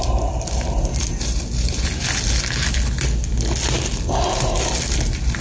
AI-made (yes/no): no